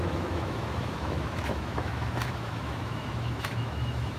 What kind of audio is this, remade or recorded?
remade